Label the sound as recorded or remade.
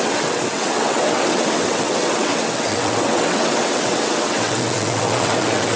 remade